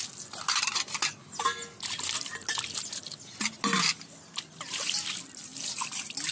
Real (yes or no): yes